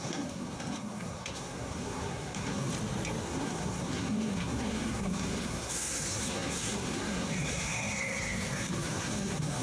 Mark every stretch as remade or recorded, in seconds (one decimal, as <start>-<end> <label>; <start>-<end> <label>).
0.0-2.7 remade; 2.7-3.2 recorded; 3.2-9.6 remade